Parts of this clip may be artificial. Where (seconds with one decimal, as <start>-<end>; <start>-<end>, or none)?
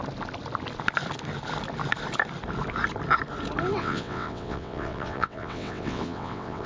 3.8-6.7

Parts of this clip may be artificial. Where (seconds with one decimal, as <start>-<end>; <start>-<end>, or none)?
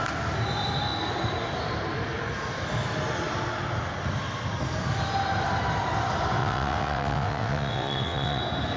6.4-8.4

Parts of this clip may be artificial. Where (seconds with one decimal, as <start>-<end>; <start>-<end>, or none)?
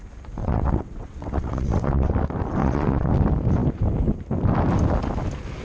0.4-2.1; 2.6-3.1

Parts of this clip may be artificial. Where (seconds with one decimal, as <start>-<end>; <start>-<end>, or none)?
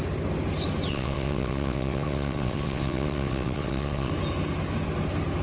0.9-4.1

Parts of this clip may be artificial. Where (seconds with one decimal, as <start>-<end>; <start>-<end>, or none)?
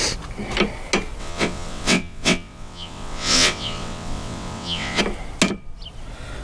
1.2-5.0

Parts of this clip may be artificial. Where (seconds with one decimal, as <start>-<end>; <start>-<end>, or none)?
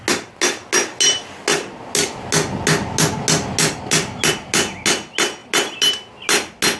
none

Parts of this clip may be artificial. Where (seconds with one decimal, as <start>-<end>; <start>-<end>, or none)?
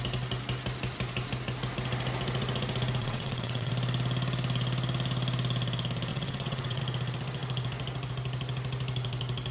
3.0-3.7; 6.1-6.8